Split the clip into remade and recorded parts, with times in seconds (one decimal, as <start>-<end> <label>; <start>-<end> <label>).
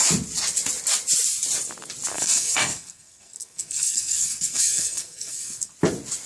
0.0-2.1 recorded; 2.1-5.7 remade; 5.7-6.3 recorded